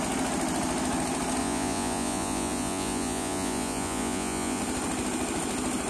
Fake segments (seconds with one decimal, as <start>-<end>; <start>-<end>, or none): 1.4-4.6